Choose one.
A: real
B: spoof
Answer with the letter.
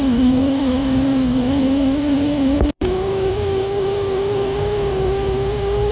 B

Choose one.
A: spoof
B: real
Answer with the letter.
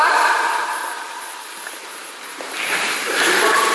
A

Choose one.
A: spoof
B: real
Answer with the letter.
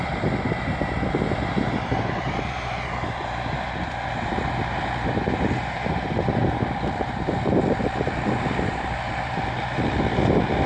A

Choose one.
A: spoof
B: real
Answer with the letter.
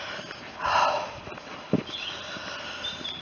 B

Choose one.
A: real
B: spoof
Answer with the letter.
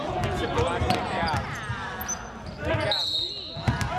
A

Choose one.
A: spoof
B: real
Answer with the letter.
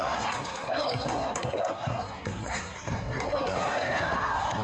A